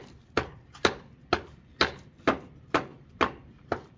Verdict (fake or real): real